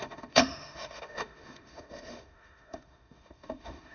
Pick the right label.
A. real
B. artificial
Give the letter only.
B